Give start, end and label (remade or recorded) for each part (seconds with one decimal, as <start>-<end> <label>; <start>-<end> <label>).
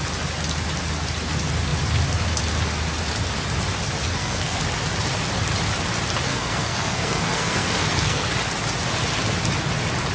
0.0-4.0 recorded; 4.0-4.6 remade; 4.6-6.3 recorded; 6.3-8.3 remade; 8.3-10.1 recorded